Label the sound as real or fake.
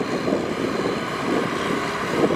real